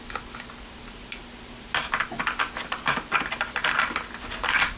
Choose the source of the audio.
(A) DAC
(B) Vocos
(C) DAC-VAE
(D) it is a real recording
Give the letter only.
D